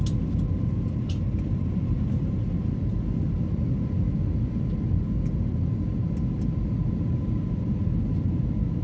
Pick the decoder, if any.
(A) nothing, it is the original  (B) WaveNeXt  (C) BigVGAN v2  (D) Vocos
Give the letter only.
A